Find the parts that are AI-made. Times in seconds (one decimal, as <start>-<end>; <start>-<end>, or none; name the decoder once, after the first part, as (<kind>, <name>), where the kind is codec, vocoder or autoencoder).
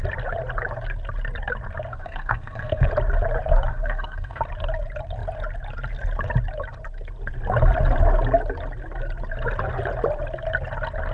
1.9-2.9 (codec, SNAC); 3.7-4.4